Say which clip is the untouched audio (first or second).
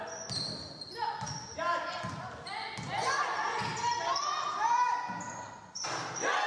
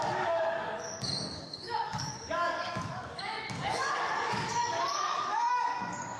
first